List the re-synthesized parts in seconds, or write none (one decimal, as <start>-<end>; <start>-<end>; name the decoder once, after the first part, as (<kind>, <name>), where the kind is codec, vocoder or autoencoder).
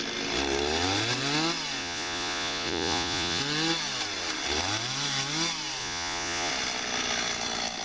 1.8-3.4 (vocoder, Vocos); 5.8-6.5